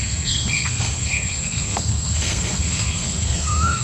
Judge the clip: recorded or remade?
remade